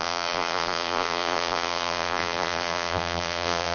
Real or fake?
fake